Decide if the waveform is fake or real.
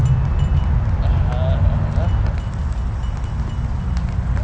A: real